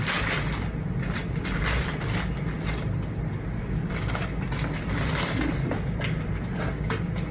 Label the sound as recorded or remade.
recorded